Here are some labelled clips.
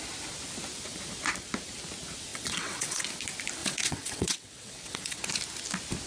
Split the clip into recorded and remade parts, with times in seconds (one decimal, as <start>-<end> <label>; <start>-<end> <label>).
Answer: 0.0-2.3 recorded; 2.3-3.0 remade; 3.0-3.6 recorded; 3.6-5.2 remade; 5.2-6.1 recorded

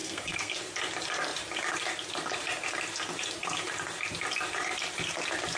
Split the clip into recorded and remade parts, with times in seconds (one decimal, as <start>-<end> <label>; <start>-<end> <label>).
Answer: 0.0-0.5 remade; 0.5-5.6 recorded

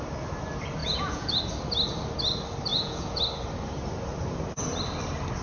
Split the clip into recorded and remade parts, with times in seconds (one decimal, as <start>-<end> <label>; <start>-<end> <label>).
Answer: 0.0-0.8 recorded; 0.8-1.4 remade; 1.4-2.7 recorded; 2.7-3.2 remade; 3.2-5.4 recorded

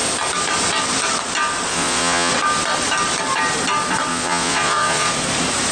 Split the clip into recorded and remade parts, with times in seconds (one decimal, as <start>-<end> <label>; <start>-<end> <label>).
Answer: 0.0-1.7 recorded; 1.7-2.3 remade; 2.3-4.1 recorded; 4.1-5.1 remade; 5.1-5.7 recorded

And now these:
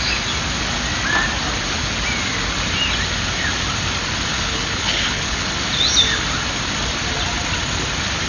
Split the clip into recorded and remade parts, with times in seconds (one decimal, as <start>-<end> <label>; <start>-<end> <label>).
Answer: 0.0-4.3 recorded; 4.3-5.5 remade; 5.5-8.3 recorded